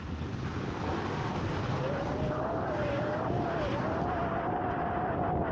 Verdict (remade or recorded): recorded